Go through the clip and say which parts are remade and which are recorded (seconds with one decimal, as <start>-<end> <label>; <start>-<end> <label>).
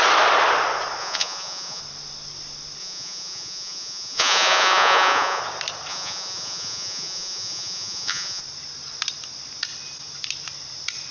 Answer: 0.0-1.0 recorded; 1.0-1.8 remade; 1.8-2.8 recorded; 2.8-5.4 remade; 5.4-5.9 recorded; 5.9-8.4 remade; 8.4-11.1 recorded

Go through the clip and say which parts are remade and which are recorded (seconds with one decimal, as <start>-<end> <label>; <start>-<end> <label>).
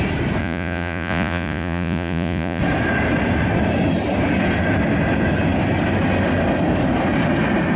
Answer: 0.0-0.4 recorded; 0.4-2.6 remade; 2.6-7.8 recorded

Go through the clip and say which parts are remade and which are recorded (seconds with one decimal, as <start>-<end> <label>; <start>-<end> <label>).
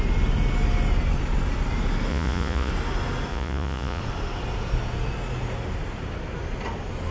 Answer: 0.0-2.1 recorded; 2.1-2.7 remade; 2.7-3.3 recorded; 3.3-4.0 remade; 4.0-7.1 recorded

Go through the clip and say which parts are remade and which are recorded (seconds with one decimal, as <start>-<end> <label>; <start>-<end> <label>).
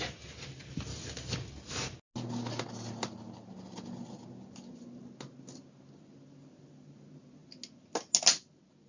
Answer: 0.0-8.9 recorded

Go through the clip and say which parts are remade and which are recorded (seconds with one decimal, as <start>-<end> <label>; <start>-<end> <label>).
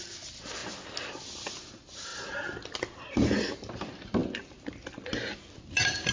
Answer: 0.0-6.1 recorded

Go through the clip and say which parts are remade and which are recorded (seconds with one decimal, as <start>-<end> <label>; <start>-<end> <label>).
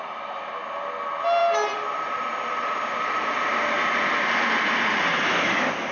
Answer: 0.0-5.9 recorded